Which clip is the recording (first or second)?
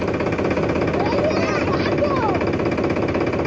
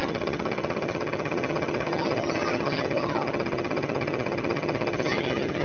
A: first